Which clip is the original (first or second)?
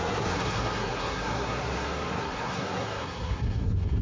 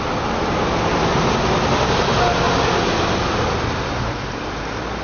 second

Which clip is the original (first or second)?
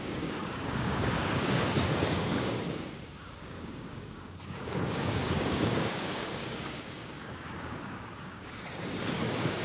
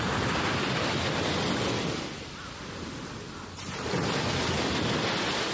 second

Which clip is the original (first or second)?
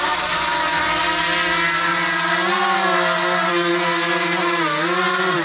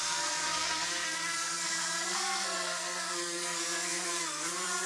first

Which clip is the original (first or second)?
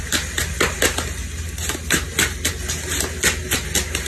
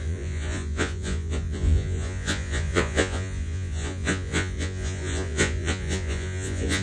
first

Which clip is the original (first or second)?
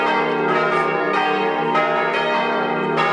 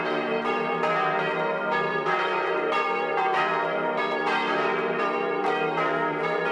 first